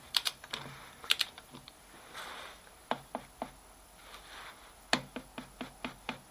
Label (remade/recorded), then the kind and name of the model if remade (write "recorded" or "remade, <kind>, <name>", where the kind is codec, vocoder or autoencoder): recorded